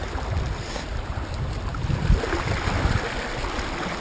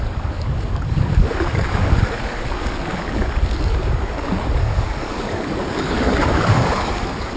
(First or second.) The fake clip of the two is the second